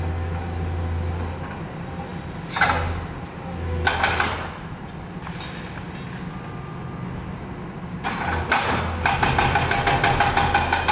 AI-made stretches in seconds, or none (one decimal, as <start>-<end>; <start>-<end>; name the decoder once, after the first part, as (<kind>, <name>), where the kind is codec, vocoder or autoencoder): none